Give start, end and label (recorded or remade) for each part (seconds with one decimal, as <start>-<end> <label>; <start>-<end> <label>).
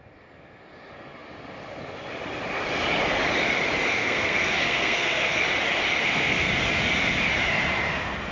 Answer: 0.0-4.0 recorded; 4.0-5.4 remade; 5.4-6.0 recorded; 6.0-6.5 remade; 6.5-8.3 recorded